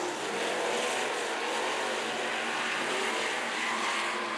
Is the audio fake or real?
real